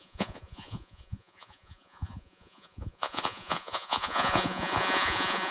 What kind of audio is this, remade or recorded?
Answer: remade